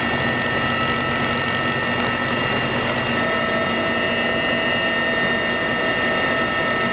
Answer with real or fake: real